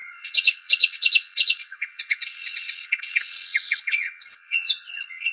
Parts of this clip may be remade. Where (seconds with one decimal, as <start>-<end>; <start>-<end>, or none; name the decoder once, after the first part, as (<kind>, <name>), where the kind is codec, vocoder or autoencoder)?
0.0-5.3 (vocoder, WaveNeXt)